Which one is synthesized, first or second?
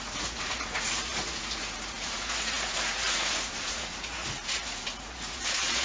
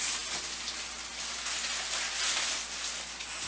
first